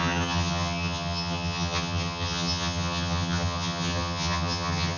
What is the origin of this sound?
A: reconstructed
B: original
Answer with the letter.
A